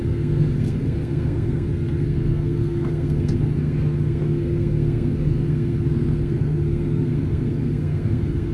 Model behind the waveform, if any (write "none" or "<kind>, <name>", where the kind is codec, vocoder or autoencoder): codec, SNAC